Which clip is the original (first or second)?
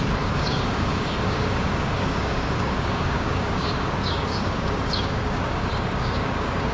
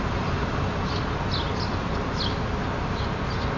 second